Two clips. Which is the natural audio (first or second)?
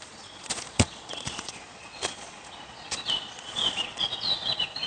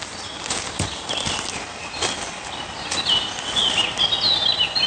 second